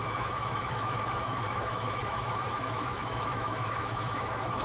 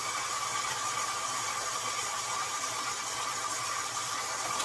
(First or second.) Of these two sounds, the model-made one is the first